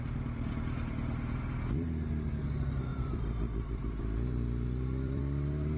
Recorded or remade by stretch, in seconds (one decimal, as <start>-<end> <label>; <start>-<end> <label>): 0.0-2.9 recorded; 2.9-5.2 remade; 5.2-5.8 recorded